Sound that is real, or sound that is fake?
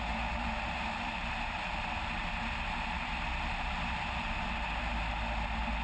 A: real